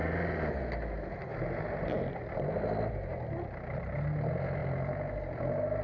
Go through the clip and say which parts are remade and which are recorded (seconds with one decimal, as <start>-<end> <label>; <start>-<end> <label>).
0.0-1.3 recorded; 1.3-2.1 remade; 2.1-5.8 recorded